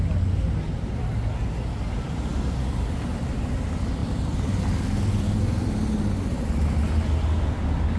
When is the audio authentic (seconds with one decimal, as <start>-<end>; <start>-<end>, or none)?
0.0-8.0